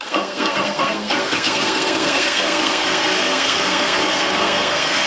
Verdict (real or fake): fake